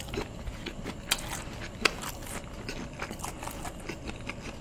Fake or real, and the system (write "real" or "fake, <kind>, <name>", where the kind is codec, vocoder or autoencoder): real